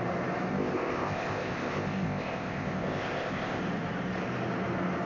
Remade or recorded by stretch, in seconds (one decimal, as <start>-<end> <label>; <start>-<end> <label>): 0.0-0.5 recorded; 0.5-3.6 remade; 3.6-5.1 recorded